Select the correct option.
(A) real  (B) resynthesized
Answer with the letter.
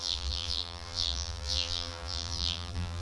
B